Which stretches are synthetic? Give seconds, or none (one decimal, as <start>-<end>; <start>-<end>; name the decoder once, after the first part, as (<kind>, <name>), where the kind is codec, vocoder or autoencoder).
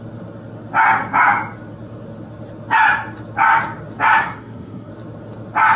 4.2-4.9 (codec, SNAC)